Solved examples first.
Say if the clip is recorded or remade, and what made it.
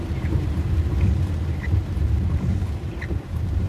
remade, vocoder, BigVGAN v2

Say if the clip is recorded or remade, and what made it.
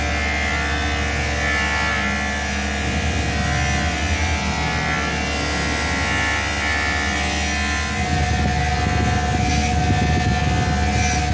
recorded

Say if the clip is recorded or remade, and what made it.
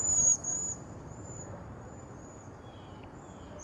remade, vocoder, BigVGAN v2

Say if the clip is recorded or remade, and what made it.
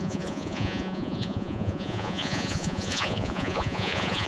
remade, vocoder, Vocos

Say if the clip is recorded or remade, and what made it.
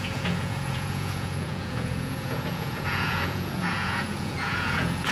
remade, vocoder, Vocos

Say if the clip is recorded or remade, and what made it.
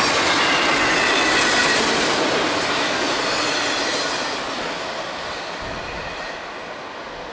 recorded